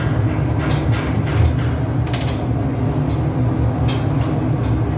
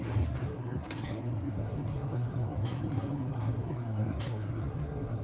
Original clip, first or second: first